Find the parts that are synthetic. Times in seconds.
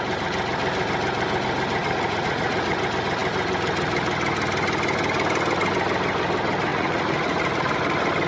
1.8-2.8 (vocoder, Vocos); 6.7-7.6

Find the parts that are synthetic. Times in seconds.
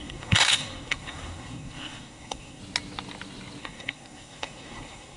0.0-2.6 (codec, SNAC); 3.6-5.2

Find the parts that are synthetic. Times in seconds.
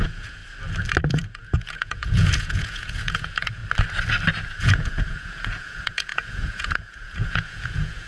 0.0-0.4 (vocoder, Vocos); 1.1-3.6; 4.6-8.1